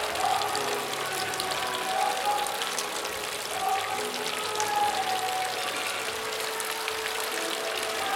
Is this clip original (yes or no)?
yes